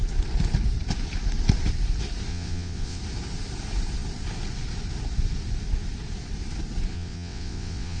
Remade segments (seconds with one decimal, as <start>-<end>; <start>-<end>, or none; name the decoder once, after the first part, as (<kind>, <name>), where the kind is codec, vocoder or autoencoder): 2.3-3.0 (vocoder, WaveNeXt); 6.9-8.0